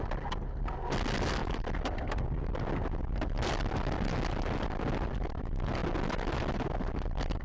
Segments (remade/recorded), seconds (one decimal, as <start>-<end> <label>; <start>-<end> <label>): 0.0-7.4 recorded